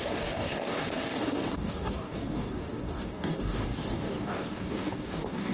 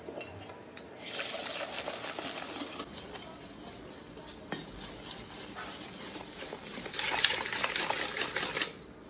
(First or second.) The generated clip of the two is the first